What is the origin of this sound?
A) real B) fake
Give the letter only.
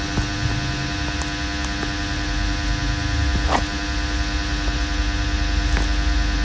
A